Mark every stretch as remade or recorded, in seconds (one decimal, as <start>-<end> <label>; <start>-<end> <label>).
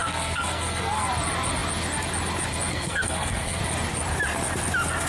0.0-1.1 remade; 1.1-2.7 recorded; 2.7-3.6 remade; 3.6-5.1 recorded